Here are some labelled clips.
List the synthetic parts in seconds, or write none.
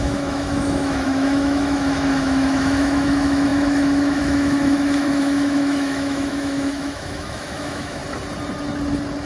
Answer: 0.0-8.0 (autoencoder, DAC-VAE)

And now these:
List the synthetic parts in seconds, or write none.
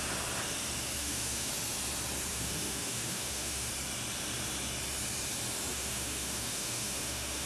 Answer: 1.0-1.5 (autoencoder, DAC-VAE); 2.3-3.7; 5.7-7.5